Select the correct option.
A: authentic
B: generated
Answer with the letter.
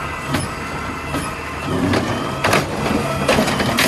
A